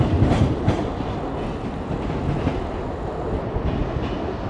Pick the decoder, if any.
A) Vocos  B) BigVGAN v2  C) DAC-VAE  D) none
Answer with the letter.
D